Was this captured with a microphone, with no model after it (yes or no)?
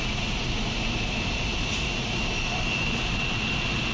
yes